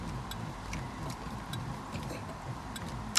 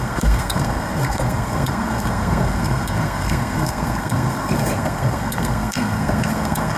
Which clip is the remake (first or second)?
second